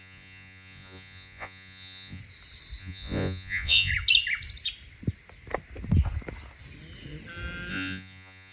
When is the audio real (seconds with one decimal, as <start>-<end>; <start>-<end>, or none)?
2.2-2.8; 3.9-7.7